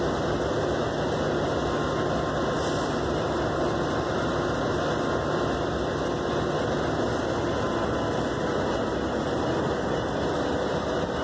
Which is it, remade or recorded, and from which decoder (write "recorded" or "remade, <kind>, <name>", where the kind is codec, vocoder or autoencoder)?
recorded